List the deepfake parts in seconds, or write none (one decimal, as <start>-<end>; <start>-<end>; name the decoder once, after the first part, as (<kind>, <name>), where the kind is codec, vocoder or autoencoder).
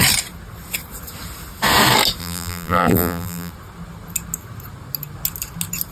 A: 2.2-3.5 (vocoder, BigVGAN v2)